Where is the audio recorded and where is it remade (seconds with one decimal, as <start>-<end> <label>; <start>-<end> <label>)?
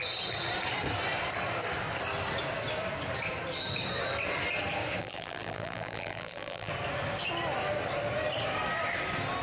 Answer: 0.0-5.0 recorded; 5.0-6.7 remade; 6.7-9.4 recorded